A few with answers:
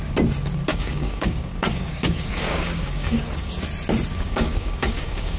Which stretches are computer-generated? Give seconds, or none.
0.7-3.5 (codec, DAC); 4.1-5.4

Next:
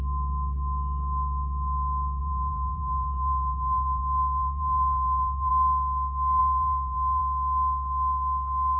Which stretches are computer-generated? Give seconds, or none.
2.2-4.0 (vocoder, BigVGAN v2); 4.4-5.5; 6.4-7.2